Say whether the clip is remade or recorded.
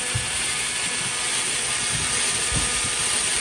recorded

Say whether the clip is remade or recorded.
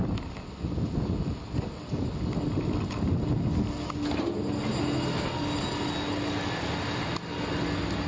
recorded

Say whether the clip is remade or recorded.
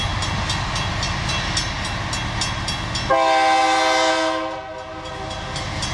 recorded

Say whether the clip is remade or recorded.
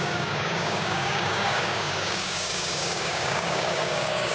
remade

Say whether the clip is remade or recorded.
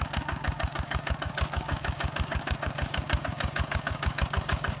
remade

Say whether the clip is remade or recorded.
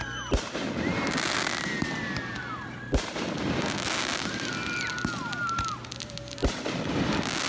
recorded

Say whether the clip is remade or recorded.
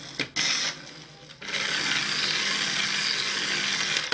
recorded